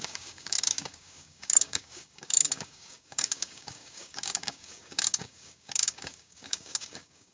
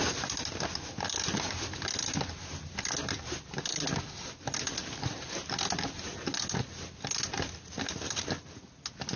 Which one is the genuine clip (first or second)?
second